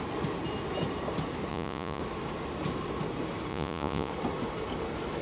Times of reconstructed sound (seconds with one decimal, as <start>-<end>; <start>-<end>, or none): 1.5-2.0; 3.5-4.1